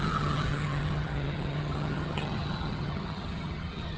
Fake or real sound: fake